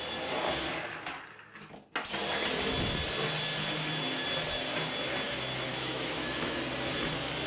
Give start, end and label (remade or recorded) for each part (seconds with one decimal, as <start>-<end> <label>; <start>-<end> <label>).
0.0-5.7 recorded; 5.7-6.6 remade; 6.6-7.5 recorded